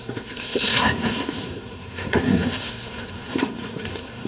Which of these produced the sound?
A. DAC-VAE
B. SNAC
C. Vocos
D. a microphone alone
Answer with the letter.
B